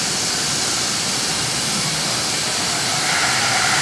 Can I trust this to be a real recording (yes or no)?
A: yes